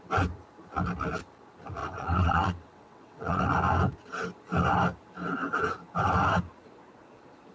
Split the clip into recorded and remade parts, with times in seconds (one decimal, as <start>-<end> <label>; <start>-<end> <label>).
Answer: 0.0-1.8 recorded; 1.8-3.4 remade; 3.4-7.5 recorded